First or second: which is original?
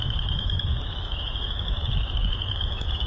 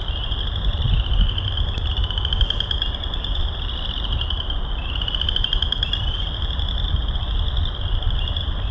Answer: second